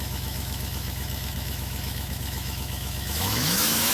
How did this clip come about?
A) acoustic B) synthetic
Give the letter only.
B